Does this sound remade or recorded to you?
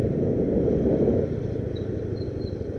recorded